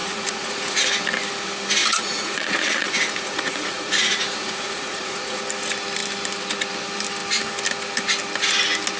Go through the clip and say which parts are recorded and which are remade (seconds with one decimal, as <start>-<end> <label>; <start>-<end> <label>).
0.0-0.8 remade; 0.8-1.8 recorded; 1.8-5.4 remade; 5.4-9.0 recorded